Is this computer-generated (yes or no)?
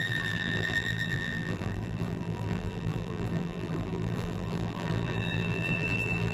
yes